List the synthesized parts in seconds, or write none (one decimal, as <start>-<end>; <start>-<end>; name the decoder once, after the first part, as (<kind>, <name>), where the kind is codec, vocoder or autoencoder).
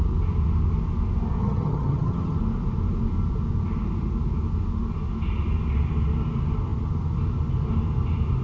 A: 1.4-2.4 (vocoder, HiFi-GAN)